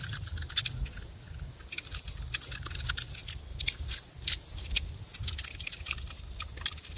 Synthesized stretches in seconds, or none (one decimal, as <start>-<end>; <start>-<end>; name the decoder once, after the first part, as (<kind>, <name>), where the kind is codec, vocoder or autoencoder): none